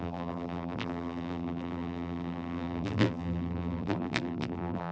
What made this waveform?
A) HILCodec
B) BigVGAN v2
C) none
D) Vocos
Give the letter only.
B